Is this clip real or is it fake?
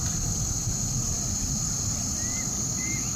real